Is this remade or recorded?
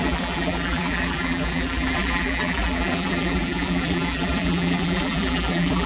remade